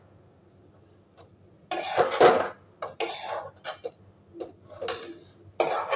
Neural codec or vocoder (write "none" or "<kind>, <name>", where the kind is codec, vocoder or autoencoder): none